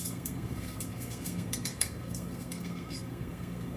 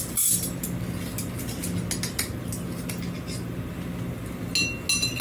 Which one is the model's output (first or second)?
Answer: first